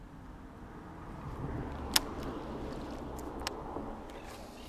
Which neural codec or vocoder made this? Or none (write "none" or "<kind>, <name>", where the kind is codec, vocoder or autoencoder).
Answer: none